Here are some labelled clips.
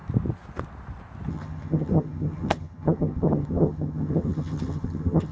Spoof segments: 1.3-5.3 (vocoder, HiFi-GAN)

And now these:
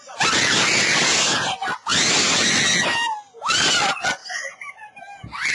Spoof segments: none

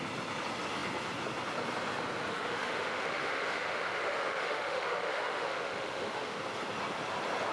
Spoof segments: 2.3-6.4 (autoencoder, DAC-VAE)

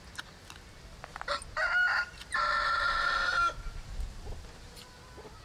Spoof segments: none

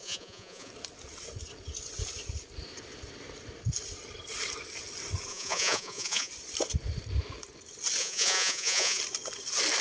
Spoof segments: 0.0-0.7 (vocoder, Vocos); 5.3-6.3; 8.0-9.0